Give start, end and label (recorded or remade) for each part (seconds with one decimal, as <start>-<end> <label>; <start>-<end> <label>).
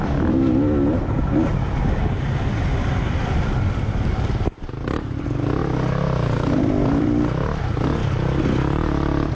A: 0.0-9.3 recorded